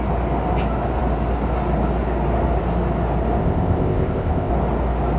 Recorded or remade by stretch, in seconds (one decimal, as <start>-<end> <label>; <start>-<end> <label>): 0.0-3.4 recorded; 3.4-4.5 remade; 4.5-5.2 recorded